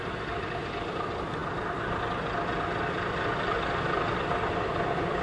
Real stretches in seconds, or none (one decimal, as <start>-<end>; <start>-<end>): 0.0-5.2